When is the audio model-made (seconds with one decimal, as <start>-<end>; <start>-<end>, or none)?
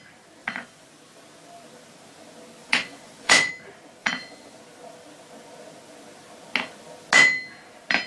0.4-0.9; 2.6-3.5; 4.0-4.6